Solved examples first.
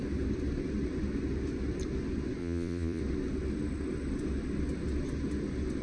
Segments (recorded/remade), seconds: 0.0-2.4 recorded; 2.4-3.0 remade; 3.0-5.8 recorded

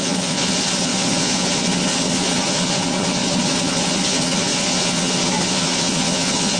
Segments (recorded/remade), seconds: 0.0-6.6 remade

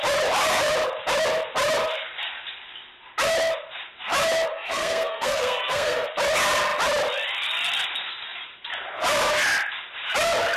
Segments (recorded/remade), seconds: 0.0-4.5 recorded; 4.5-6.1 remade; 6.1-10.6 recorded

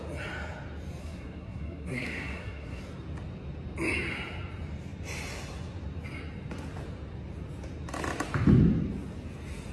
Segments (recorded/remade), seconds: 0.0-1.0 recorded; 1.0-2.8 remade; 2.8-9.7 recorded

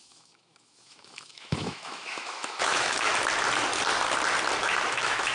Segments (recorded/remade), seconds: 0.0-3.1 remade; 3.1-4.6 recorded; 4.6-5.3 remade